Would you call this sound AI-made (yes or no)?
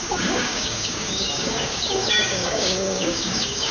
yes